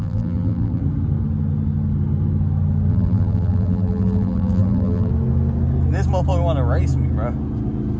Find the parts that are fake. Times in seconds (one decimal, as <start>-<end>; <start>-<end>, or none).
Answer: 0.0-0.8; 2.9-5.1